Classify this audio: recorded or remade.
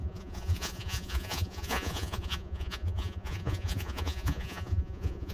remade